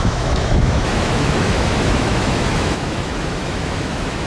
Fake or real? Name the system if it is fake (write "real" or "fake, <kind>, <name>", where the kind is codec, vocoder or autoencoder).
fake, autoencoder, DAC-VAE